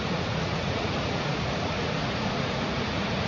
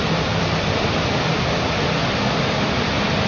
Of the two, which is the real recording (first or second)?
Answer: second